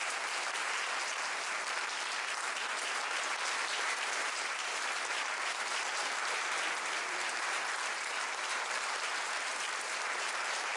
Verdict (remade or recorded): remade